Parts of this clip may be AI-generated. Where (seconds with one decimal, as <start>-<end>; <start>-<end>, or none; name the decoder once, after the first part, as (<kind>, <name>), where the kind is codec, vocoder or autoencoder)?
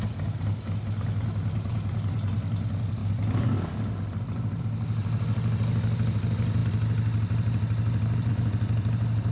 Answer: none